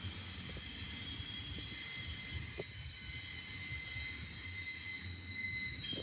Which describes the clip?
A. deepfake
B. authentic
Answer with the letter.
B